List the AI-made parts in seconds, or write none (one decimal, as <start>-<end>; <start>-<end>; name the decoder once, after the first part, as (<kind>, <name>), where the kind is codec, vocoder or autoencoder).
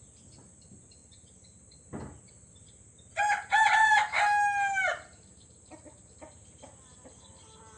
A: none